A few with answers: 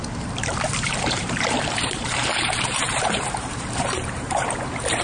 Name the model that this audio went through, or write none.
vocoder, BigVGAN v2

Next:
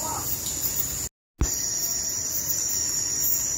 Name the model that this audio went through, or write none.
none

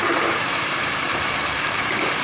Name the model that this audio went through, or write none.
vocoder, BigVGAN v2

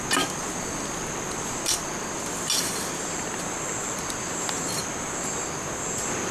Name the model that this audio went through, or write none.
none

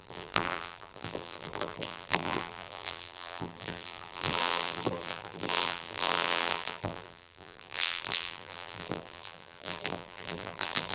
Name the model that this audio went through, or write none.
vocoder, BigVGAN v2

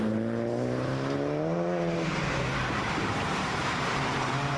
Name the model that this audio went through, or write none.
vocoder, BigVGAN v2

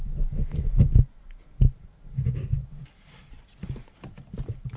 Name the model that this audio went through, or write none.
none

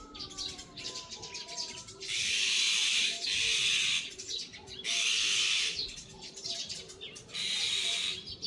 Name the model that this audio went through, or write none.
vocoder, BigVGAN v2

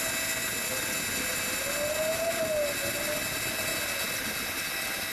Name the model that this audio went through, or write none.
none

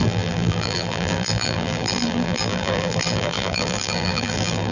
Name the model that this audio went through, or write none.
vocoder, BigVGAN v2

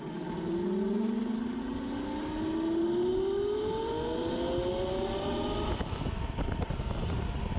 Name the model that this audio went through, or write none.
none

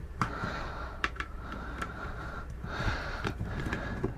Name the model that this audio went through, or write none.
vocoder, BigVGAN v2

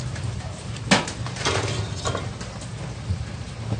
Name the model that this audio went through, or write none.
none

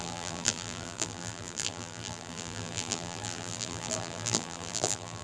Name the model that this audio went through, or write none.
vocoder, BigVGAN v2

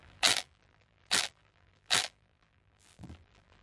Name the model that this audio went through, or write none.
vocoder, BigVGAN v2